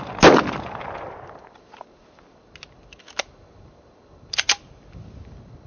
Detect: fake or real real